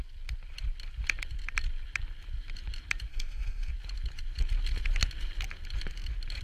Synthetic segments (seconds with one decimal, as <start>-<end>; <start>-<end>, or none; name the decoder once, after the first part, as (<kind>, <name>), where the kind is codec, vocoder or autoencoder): 3.1-3.7 (codec, SNAC)